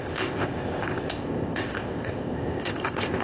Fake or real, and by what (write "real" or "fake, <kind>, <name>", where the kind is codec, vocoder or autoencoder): fake, codec, ZipCodec